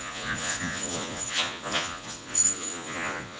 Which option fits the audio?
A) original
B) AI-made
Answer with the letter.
B